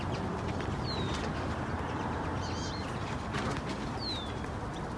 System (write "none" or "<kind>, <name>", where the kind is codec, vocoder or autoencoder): none